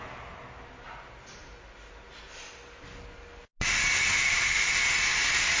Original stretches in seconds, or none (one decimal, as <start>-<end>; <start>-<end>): 0.0-5.6